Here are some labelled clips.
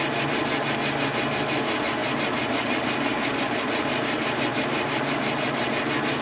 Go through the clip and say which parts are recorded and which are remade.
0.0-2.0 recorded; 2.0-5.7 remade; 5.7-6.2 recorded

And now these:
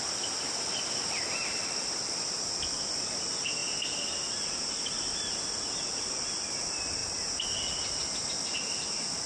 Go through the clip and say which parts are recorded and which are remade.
0.0-9.3 recorded

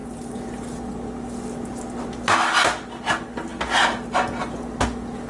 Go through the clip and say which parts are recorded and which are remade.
0.0-5.3 recorded